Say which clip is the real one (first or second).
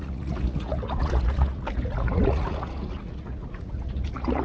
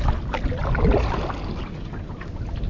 second